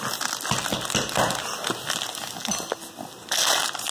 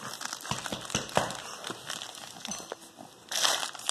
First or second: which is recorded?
first